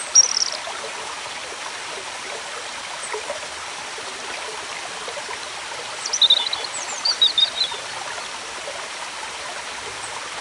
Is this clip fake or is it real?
fake